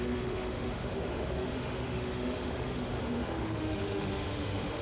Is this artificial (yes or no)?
yes